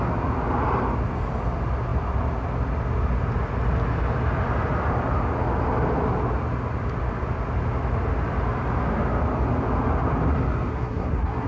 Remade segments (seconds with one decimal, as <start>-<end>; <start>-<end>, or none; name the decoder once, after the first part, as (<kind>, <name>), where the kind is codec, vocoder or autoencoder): 10.7-11.5 (codec, SNAC)